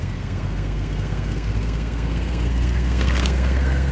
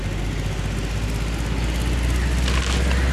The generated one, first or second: first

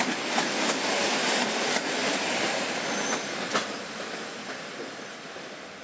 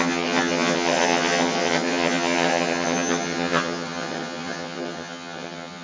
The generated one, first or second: second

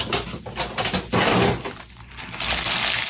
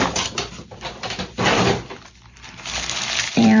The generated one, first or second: second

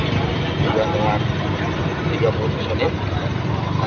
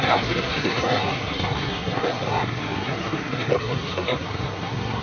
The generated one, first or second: second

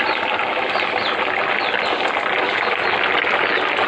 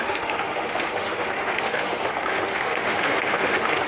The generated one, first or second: second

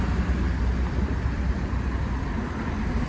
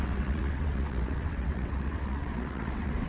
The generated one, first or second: second